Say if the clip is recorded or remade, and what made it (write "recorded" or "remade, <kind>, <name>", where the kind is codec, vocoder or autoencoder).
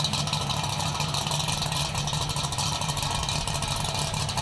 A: recorded